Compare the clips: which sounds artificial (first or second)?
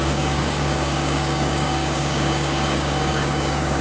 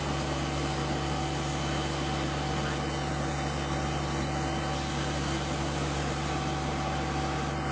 first